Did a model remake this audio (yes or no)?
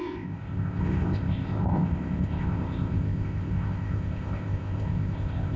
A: yes